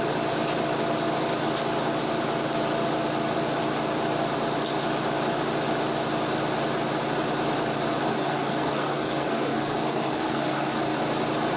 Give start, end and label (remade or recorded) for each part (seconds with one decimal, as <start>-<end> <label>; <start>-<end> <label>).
0.0-8.1 recorded; 8.1-11.0 remade; 11.0-11.6 recorded